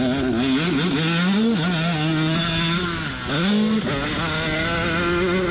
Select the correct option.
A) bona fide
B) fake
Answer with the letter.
A